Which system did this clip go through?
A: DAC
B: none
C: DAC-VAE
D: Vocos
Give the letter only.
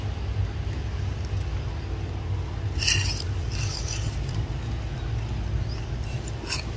B